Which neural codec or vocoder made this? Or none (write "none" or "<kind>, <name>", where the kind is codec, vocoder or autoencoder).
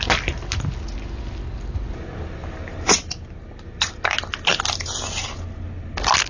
none